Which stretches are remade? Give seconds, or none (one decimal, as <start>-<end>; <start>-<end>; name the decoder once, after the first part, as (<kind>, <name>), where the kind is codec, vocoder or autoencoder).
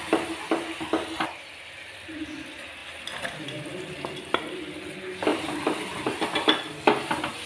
5.3-6.1 (vocoder, BigVGAN v2)